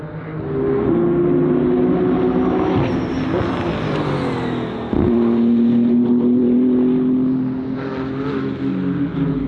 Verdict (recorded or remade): recorded